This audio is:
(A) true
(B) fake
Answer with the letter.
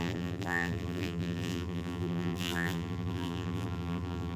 B